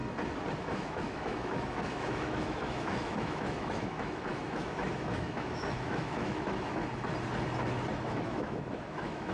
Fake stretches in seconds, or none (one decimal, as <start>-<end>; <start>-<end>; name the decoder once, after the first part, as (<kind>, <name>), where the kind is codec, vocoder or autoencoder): 0.6-6.8 (autoencoder, DAC-VAE); 7.9-9.3